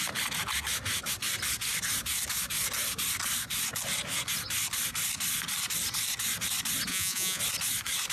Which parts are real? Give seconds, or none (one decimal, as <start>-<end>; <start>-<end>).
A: 0.0-6.9; 7.4-8.1